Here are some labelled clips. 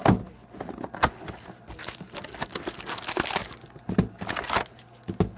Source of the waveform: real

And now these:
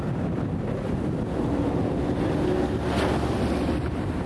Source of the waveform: real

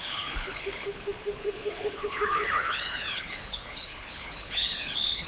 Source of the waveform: fake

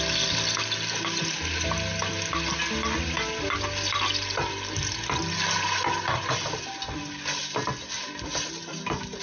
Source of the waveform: real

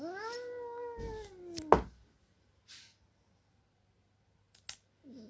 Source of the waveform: real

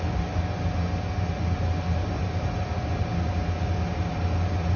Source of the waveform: real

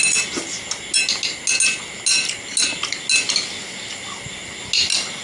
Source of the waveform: real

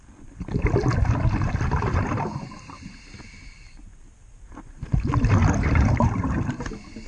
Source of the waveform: real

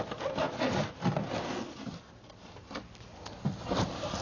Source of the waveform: real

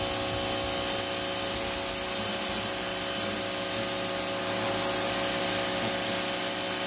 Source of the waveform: real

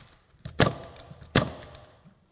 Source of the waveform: real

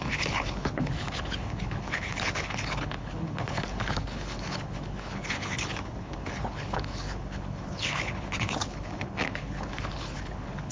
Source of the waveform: fake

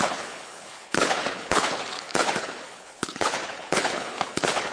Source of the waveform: fake